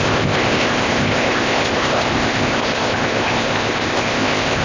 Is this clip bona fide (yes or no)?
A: no